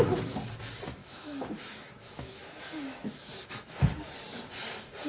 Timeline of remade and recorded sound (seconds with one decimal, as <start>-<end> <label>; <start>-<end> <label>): 0.0-1.0 recorded; 1.0-4.1 remade; 4.1-5.1 recorded